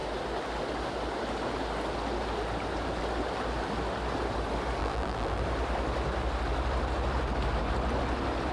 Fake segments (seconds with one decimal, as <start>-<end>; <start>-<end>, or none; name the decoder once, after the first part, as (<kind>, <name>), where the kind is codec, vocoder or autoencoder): 4.8-5.4 (vocoder, BigVGAN v2)